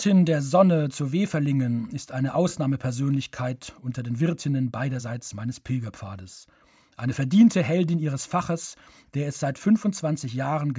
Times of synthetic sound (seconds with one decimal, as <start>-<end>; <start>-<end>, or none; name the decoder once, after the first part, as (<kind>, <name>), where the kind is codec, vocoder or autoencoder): none